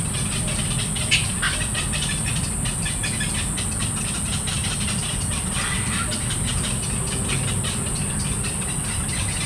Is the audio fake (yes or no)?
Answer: no